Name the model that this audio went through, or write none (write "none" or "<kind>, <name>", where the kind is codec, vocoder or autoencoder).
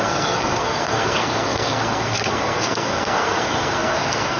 codec, SNAC